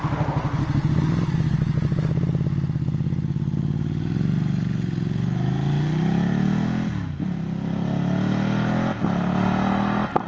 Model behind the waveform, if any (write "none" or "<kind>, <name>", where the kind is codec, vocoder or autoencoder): none